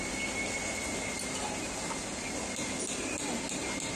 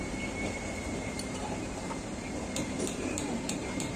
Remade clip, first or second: second